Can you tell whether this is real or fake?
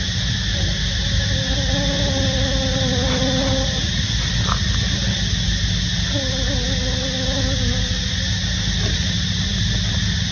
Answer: real